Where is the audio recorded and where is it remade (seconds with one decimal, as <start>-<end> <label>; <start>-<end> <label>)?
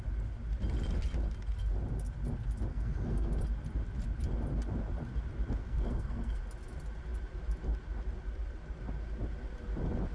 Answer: 0.0-2.7 recorded; 2.7-3.3 remade; 3.3-5.6 recorded; 5.6-6.4 remade; 6.4-10.1 recorded